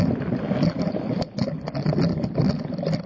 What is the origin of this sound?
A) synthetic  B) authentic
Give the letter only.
A